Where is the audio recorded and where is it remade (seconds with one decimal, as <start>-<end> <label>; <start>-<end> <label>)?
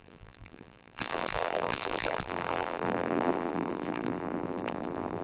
0.0-5.2 remade